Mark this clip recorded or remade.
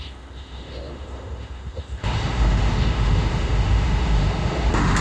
remade